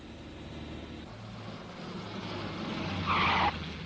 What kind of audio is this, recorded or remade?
recorded